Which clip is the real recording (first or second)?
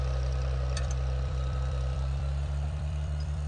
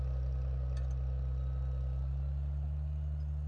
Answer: second